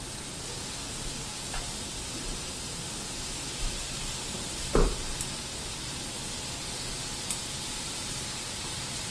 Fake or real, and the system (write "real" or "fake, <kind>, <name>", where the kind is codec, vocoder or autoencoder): real